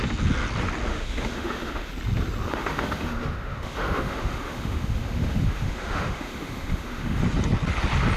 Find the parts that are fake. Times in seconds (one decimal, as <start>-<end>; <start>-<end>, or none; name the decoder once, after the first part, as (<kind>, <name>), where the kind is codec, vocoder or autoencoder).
0.9-1.9 (autoencoder, DAC-VAE); 2.5-7.2